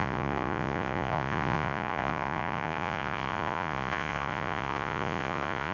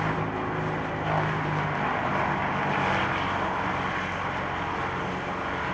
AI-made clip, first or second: first